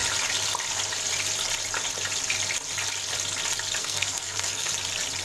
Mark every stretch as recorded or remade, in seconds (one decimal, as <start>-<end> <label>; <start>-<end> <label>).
0.0-3.8 recorded; 3.8-4.7 remade; 4.7-5.2 recorded